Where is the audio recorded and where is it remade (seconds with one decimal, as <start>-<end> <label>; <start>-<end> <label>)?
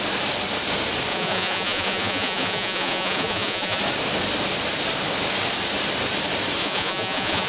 0.0-1.1 recorded; 1.1-3.8 remade; 3.8-6.6 recorded; 6.6-7.5 remade